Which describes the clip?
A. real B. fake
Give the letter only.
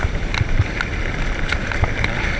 A